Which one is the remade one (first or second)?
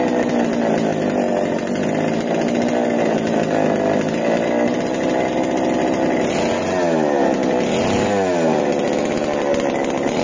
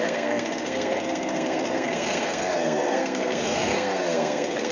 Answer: second